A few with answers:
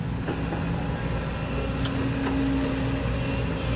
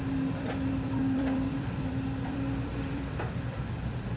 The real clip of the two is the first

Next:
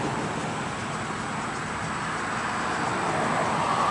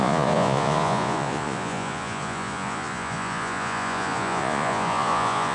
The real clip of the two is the first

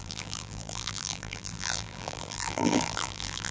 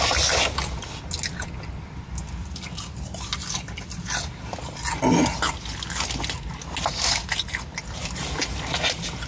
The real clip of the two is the second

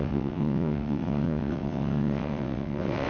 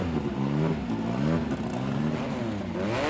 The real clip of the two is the second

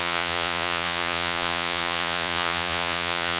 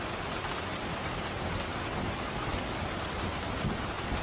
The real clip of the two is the second